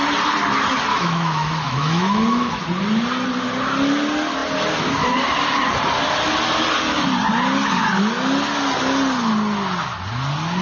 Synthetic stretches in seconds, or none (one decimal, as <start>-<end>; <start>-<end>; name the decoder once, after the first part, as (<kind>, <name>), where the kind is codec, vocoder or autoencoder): 0.9-2.6 (autoencoder, DAC-VAE)